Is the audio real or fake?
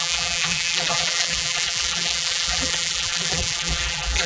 fake